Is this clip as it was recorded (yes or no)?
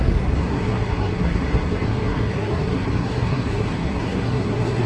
no